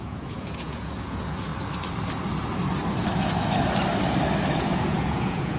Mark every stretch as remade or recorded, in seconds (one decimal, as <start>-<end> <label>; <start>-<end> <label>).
0.0-1.5 remade; 1.5-4.5 recorded; 4.5-5.6 remade